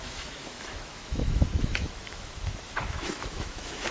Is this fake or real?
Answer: fake